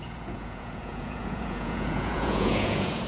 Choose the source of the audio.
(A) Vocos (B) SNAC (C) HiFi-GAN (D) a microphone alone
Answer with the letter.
A